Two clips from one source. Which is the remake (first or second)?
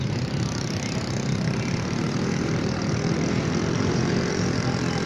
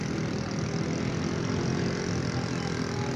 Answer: first